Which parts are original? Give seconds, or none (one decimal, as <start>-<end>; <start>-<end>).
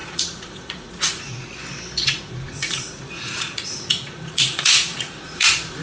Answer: 1.5-2.0